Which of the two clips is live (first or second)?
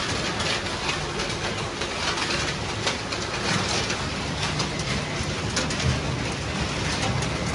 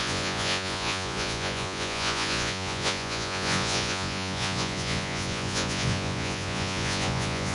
first